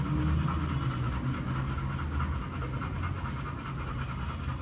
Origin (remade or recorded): recorded